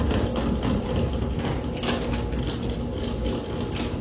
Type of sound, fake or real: real